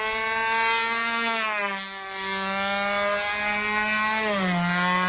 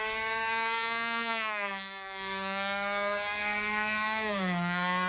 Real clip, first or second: first